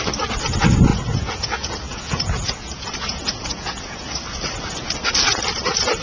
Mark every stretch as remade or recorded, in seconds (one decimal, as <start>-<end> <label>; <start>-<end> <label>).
0.0-0.9 recorded; 0.9-4.1 remade; 4.1-6.0 recorded